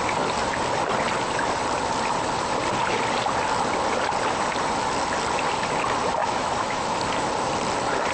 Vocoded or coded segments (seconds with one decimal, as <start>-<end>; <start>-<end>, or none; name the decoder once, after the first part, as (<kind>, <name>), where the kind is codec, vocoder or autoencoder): 6.2-7.0 (autoencoder, DAC-VAE)